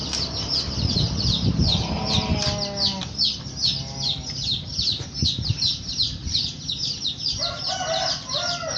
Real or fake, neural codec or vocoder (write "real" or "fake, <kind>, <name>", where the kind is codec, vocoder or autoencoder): real